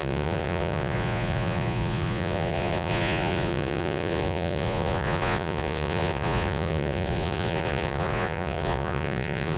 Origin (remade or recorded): remade